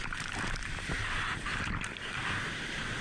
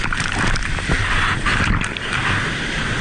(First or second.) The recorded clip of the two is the second